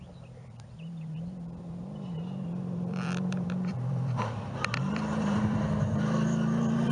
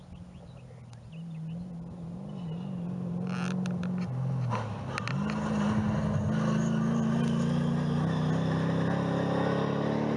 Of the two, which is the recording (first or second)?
second